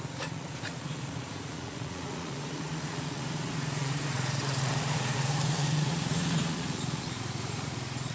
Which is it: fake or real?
fake